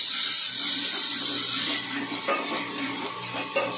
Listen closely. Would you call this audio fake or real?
real